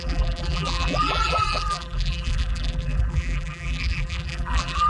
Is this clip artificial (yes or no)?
yes